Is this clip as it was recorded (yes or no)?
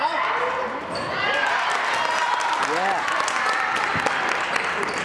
yes